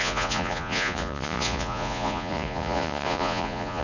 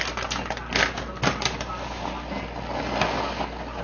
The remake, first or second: first